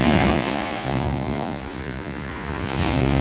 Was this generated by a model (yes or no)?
yes